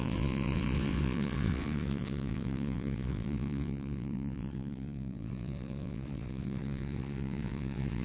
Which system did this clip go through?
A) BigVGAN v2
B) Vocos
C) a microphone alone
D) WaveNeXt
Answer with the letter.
D